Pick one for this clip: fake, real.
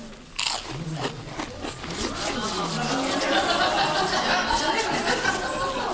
real